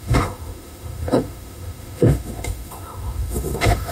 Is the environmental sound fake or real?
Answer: fake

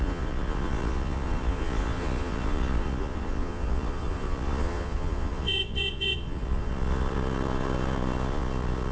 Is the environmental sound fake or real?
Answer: fake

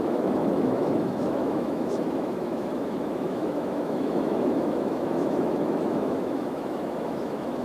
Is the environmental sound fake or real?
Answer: fake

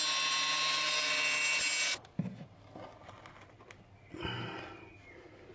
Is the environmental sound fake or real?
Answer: real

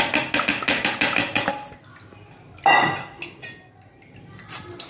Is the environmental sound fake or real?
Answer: real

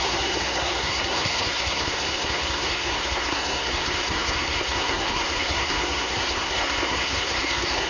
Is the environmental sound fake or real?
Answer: fake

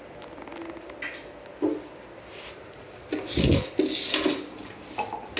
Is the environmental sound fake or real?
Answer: real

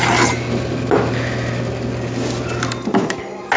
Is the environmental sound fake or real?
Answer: real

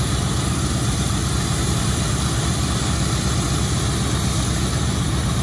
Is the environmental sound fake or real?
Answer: real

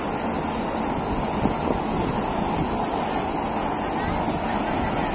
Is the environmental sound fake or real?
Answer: real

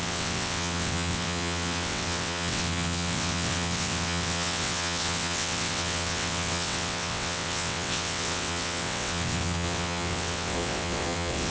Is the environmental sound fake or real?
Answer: fake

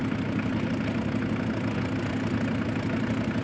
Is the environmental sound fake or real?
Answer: real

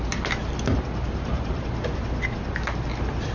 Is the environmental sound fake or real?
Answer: real